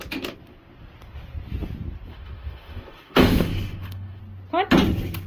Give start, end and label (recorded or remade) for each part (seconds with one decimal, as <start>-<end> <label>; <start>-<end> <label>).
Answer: 0.0-2.1 recorded; 2.1-4.2 remade; 4.2-5.3 recorded